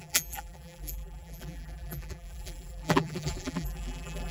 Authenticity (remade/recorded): remade